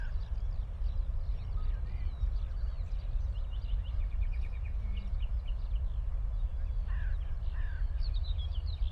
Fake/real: real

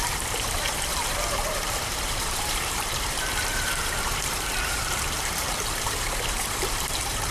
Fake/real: fake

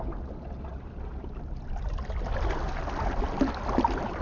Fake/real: real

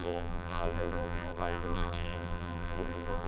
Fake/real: fake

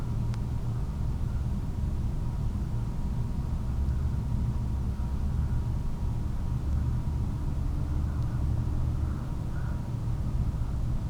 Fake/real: real